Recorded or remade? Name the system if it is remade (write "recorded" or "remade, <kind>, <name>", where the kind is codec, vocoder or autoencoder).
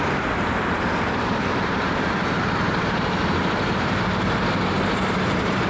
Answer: remade, vocoder, BigVGAN v2